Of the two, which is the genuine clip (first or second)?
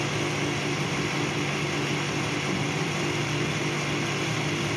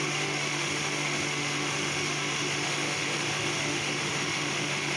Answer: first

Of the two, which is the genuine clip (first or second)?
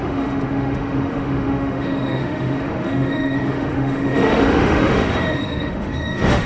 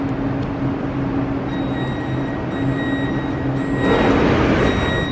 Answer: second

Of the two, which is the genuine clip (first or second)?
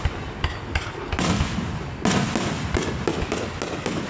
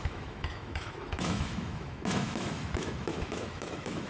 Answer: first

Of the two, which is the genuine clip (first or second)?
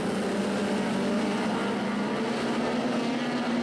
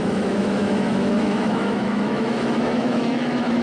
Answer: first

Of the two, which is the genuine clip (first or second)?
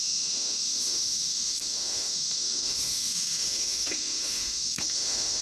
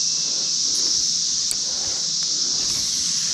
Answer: second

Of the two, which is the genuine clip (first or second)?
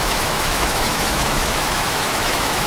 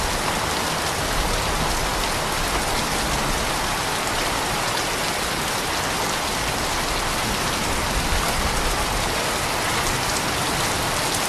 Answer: second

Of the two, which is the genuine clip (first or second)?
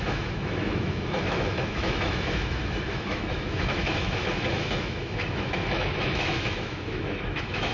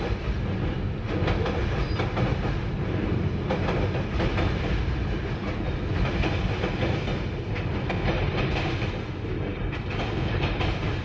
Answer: second